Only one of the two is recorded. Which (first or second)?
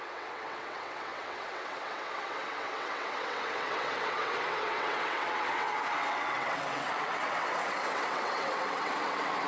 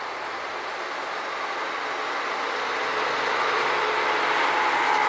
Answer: second